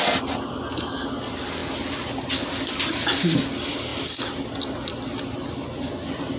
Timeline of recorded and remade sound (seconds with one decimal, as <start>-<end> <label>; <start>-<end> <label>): 0.0-6.4 recorded

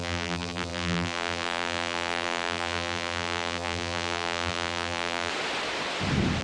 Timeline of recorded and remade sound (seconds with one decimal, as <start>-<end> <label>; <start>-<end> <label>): 0.0-5.3 remade; 5.3-6.4 recorded

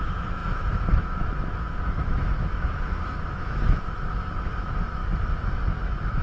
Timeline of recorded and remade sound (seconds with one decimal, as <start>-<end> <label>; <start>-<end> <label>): 0.0-5.0 remade; 5.0-5.7 recorded; 5.7-6.2 remade

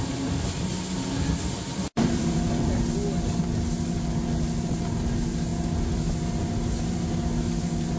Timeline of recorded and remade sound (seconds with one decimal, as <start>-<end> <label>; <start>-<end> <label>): 0.0-1.7 recorded; 1.7-2.8 remade; 2.8-8.0 recorded

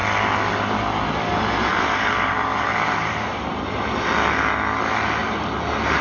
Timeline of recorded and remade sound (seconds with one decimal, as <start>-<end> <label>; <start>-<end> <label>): 0.0-1.7 recorded; 1.7-3.9 remade; 3.9-5.2 recorded; 5.2-6.0 remade

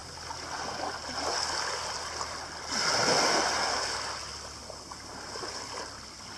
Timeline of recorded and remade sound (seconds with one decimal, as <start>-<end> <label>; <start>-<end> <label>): 0.0-6.4 recorded

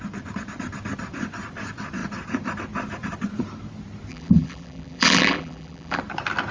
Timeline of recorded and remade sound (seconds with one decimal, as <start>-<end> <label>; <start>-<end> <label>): 0.0-4.1 recorded; 4.1-6.0 remade; 6.0-6.5 recorded